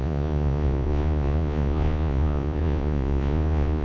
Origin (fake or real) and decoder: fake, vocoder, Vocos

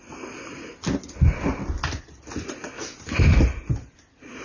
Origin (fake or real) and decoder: real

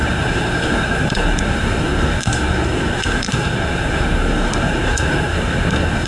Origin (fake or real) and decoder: fake, codec, SNAC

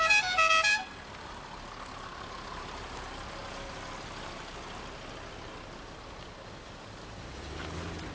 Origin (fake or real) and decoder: real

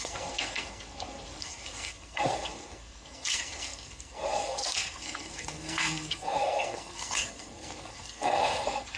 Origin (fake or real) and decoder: fake, codec, SNAC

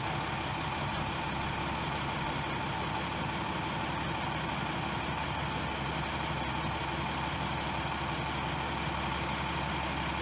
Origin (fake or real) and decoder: real